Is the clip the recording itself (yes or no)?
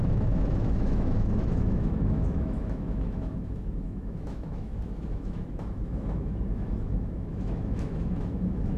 no